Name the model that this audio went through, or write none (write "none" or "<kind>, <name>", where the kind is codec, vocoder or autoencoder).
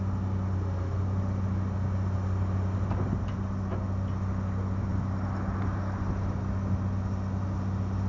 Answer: none